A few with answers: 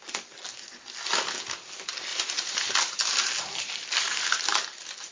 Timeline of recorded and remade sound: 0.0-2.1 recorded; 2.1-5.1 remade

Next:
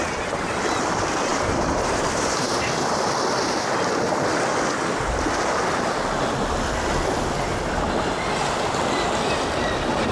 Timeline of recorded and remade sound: 0.0-1.3 recorded; 1.3-2.7 remade; 2.7-10.1 recorded

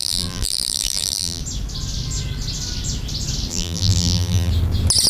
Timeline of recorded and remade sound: 0.0-1.4 remade; 1.4-3.5 recorded; 3.5-4.5 remade; 4.5-5.1 recorded

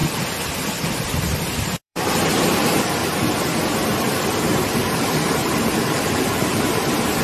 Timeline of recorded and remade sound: 0.0-1.6 recorded; 1.6-3.0 remade; 3.0-4.0 recorded; 4.0-7.2 remade